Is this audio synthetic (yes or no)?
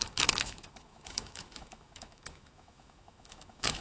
yes